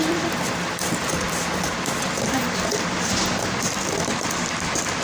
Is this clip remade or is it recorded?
remade